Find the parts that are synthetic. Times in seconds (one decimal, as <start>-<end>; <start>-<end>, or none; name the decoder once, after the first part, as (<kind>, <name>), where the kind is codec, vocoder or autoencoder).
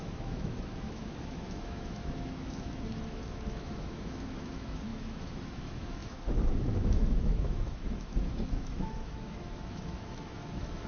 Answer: 0.0-10.9 (autoencoder, DAC-VAE)